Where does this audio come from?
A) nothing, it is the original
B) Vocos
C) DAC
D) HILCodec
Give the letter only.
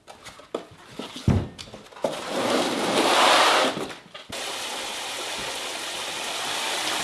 A